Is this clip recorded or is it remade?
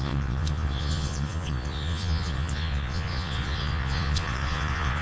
remade